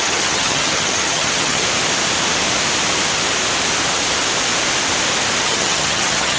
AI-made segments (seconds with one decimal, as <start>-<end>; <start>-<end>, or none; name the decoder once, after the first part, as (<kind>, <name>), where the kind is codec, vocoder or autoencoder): 0.0-1.6 (vocoder, HiFi-GAN); 5.4-6.4